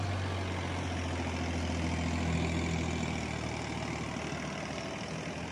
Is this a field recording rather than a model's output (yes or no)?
yes